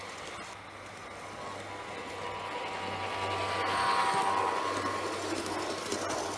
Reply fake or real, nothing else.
real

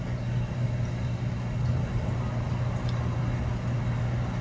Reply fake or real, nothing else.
real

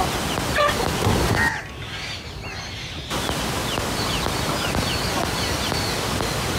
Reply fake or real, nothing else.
real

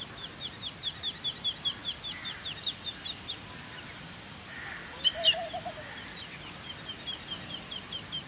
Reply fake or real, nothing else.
real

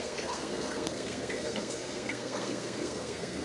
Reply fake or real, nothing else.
fake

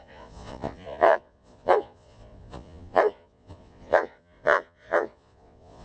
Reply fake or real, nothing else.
fake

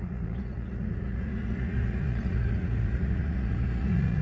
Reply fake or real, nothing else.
fake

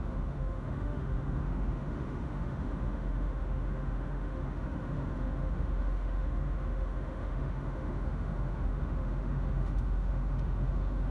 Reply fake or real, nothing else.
fake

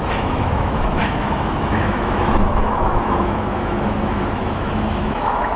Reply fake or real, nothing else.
fake